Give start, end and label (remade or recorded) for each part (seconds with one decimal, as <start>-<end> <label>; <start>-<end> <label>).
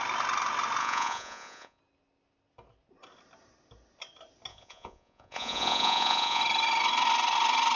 0.0-0.8 recorded; 0.8-1.8 remade; 1.8-4.5 recorded; 4.5-6.4 remade; 6.4-7.8 recorded